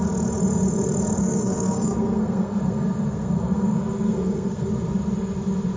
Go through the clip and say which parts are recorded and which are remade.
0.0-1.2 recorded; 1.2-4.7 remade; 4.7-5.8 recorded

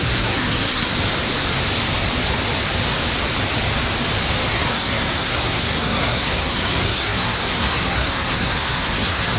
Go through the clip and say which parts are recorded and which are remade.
0.0-0.9 remade; 0.9-4.5 recorded; 4.5-9.4 remade

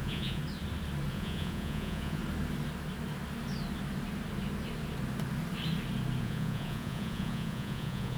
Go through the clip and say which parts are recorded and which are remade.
0.0-0.4 remade; 0.4-1.1 recorded; 1.1-2.2 remade; 2.2-6.2 recorded; 6.2-8.2 remade

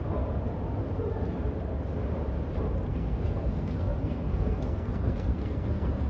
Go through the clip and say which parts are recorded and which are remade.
0.0-2.9 recorded; 2.9-6.1 remade